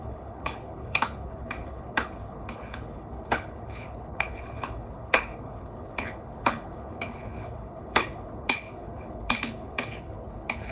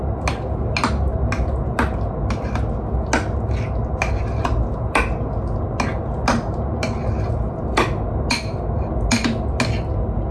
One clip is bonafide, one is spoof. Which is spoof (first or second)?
first